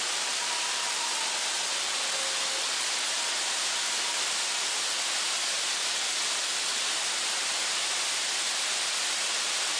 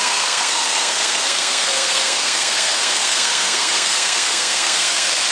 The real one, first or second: first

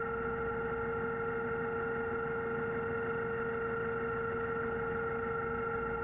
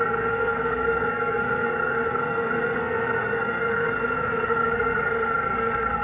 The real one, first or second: first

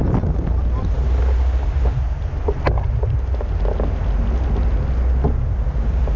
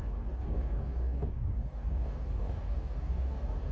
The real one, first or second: first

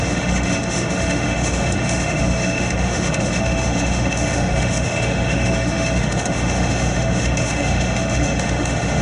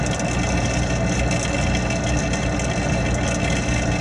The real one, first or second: second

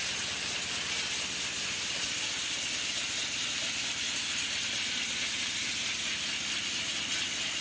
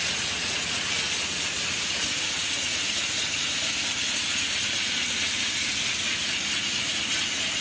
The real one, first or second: first